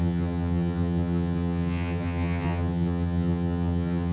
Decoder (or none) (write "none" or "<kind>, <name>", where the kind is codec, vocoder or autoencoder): vocoder, HiFi-GAN